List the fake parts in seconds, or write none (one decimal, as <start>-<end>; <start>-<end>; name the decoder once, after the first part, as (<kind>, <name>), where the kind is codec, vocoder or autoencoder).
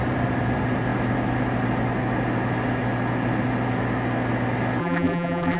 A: 4.8-5.6 (vocoder, BigVGAN v2)